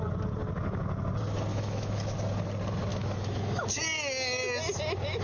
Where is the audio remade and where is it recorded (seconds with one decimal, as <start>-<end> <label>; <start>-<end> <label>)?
0.0-1.5 recorded; 1.5-2.0 remade; 2.0-2.9 recorded; 2.9-3.6 remade; 3.6-5.2 recorded